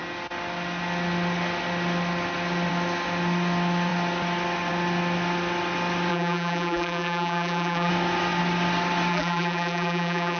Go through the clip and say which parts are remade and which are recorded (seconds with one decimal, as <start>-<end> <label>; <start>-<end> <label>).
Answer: 0.0-6.1 recorded; 6.1-7.9 remade; 7.9-9.1 recorded; 9.1-10.4 remade